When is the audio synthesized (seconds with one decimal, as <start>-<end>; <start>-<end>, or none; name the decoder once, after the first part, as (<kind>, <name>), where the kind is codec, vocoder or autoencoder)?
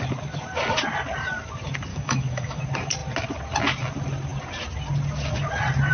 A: 1.9-2.6 (autoencoder, DAC-VAE)